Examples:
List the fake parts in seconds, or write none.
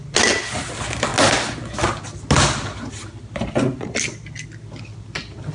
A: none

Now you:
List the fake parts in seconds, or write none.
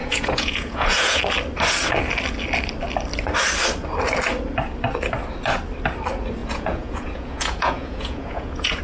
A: 0.0-1.2 (vocoder, Vocos); 6.4-8.8